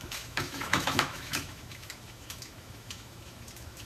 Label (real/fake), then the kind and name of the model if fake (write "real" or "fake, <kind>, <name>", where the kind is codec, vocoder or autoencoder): fake, autoencoder, DAC-VAE